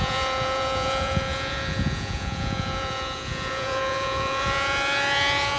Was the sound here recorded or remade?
remade